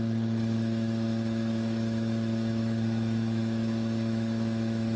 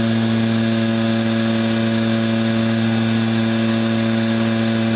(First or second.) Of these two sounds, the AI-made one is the first